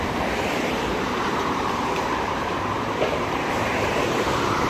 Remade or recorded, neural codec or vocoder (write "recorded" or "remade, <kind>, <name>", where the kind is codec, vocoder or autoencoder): remade, vocoder, BigVGAN v2